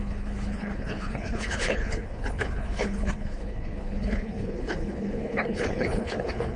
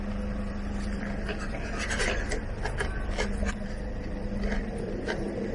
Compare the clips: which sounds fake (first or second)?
first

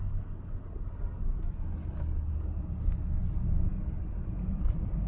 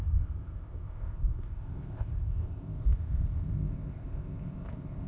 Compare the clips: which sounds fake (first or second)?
second